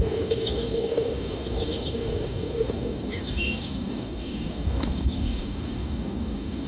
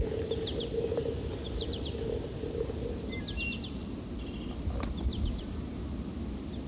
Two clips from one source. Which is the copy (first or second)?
first